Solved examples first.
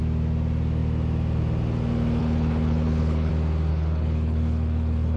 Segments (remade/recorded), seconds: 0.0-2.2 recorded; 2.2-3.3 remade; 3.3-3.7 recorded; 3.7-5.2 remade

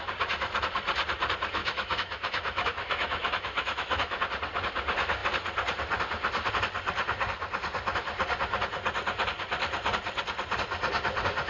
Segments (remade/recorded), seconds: 0.0-1.6 recorded; 1.6-4.2 remade; 4.2-11.5 recorded

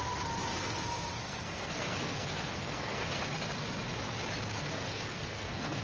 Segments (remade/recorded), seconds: 0.0-0.5 recorded; 0.5-3.2 remade; 3.2-4.5 recorded; 4.5-5.8 remade

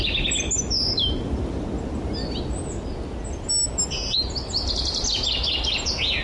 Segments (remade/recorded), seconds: 0.0-6.2 recorded